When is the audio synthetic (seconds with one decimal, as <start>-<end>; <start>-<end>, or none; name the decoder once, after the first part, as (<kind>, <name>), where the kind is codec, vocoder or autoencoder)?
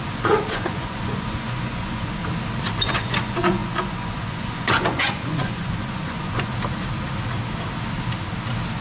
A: 0.0-2.2 (vocoder, Vocos); 2.9-6.5